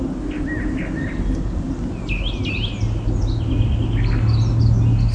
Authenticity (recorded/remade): recorded